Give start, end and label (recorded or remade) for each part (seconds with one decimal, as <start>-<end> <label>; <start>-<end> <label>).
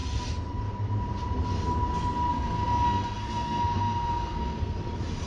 0.0-2.3 recorded; 2.3-4.8 remade; 4.8-5.3 recorded